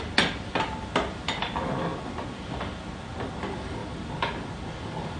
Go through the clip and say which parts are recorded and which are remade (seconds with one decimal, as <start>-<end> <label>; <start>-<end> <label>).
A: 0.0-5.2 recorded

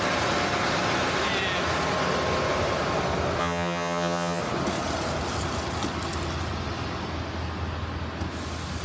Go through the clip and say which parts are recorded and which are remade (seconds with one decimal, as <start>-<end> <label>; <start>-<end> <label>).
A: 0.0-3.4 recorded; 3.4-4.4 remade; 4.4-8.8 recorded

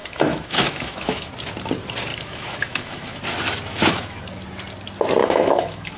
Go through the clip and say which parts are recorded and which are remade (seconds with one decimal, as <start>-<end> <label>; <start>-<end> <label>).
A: 0.0-1.3 remade; 1.3-2.1 recorded; 2.1-3.2 remade; 3.2-3.7 recorded; 3.7-4.2 remade; 4.2-5.2 recorded; 5.2-6.0 remade

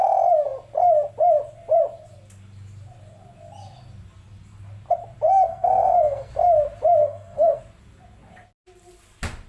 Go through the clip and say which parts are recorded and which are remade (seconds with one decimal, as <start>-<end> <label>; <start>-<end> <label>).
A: 0.0-5.5 recorded; 5.5-6.3 remade; 6.3-7.0 recorded; 7.0-7.6 remade; 7.6-9.5 recorded

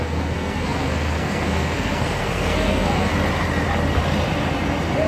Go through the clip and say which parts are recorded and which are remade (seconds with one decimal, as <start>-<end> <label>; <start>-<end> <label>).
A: 0.0-3.1 remade; 3.1-5.1 recorded

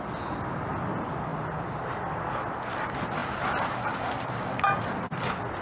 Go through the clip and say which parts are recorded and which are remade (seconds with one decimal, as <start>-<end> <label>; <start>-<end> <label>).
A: 0.0-3.2 recorded; 3.2-5.0 remade; 5.0-5.6 recorded